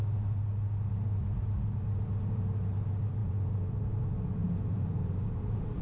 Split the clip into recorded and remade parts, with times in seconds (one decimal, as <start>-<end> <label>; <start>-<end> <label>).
0.0-3.2 recorded; 3.2-3.9 remade; 3.9-4.4 recorded; 4.4-5.8 remade